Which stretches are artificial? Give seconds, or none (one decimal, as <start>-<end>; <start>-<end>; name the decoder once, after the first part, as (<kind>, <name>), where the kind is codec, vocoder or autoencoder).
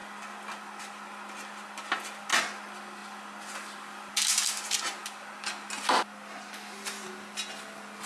none